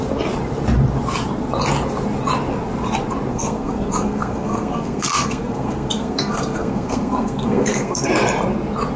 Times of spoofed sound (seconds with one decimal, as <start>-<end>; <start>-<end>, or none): 3.3-8.1

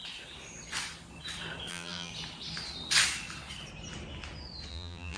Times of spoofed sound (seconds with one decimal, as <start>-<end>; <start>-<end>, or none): 1.7-2.1; 4.7-5.2